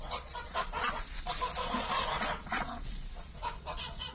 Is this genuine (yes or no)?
no